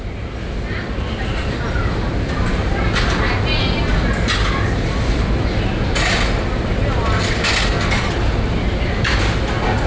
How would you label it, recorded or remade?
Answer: recorded